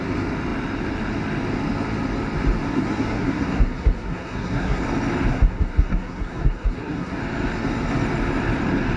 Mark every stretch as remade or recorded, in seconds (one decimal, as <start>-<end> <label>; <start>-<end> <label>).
0.0-2.7 recorded; 2.7-4.8 remade; 4.8-5.3 recorded; 5.3-7.2 remade; 7.2-9.0 recorded